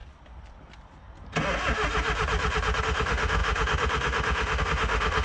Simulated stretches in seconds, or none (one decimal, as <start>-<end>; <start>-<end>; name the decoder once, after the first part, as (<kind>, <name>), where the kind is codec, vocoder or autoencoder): 2.8-5.2 (autoencoder, DAC-VAE)